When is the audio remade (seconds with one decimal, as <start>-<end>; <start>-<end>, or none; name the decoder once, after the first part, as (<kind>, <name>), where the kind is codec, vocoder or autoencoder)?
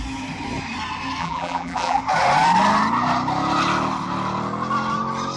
1.2-2.0 (vocoder, BigVGAN v2)